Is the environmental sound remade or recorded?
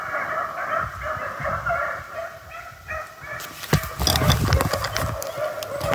recorded